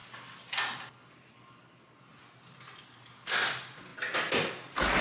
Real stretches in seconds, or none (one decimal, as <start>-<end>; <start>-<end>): 0.0-5.0